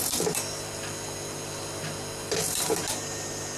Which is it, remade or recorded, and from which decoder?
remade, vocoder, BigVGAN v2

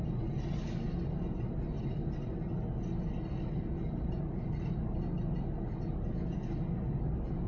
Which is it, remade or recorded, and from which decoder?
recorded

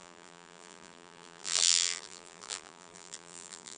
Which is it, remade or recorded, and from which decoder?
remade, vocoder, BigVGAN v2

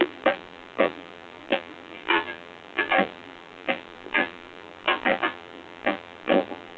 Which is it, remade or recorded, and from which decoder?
remade, vocoder, BigVGAN v2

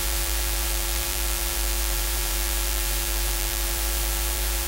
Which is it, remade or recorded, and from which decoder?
remade, vocoder, BigVGAN v2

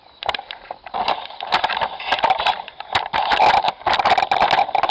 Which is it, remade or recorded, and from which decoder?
remade, vocoder, BigVGAN v2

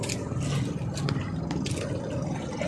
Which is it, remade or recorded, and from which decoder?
recorded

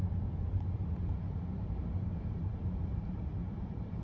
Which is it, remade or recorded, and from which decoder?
remade, vocoder, BigVGAN v2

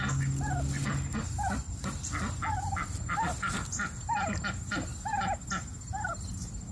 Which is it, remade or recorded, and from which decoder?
recorded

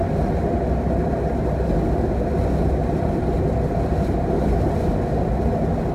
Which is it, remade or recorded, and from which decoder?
recorded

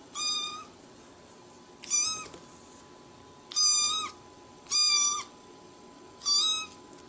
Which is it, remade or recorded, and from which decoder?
recorded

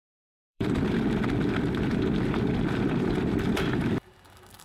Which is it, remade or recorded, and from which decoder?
remade, vocoder, BigVGAN v2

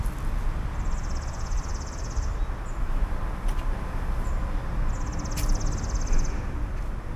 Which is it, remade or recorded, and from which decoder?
recorded